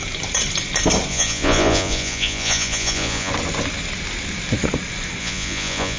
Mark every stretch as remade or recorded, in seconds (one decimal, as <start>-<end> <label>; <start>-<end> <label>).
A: 0.0-1.1 recorded; 1.1-3.3 remade; 3.3-5.2 recorded; 5.2-6.0 remade